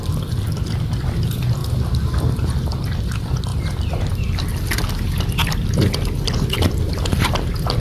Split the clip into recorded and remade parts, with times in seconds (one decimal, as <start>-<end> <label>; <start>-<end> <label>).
0.0-3.5 recorded; 3.5-7.2 remade; 7.2-7.8 recorded